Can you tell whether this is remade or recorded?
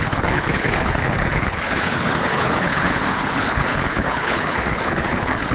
remade